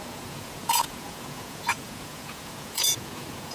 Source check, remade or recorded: remade